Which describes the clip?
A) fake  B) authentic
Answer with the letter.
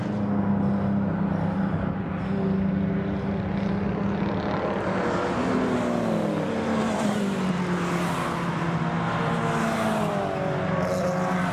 B